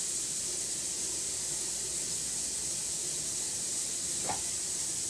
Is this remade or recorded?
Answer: recorded